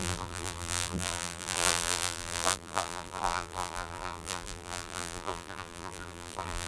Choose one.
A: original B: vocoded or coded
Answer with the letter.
B